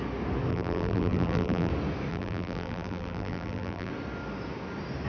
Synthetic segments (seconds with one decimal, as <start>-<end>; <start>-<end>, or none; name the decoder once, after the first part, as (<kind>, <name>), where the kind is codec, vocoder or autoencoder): 0.5-1.7 (vocoder, BigVGAN v2); 2.1-3.9